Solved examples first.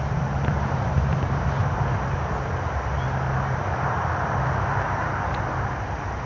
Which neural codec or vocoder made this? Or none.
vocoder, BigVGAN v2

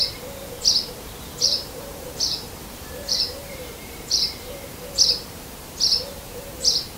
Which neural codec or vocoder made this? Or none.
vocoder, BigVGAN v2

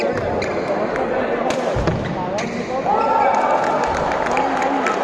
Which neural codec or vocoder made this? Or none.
none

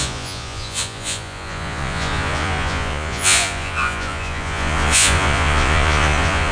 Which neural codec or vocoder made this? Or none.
vocoder, Vocos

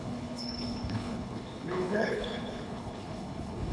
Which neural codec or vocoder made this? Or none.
codec, HILCodec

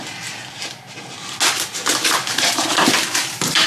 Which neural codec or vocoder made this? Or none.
none